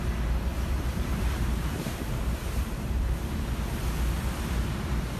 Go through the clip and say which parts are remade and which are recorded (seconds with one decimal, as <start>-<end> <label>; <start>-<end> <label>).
0.0-0.5 recorded; 0.5-3.6 remade; 3.6-5.2 recorded